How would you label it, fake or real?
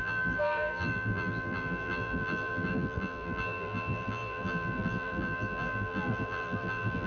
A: fake